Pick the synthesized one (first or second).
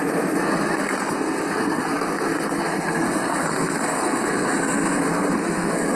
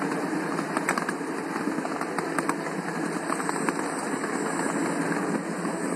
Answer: first